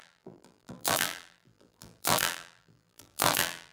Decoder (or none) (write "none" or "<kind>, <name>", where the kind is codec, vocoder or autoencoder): vocoder, BigVGAN v2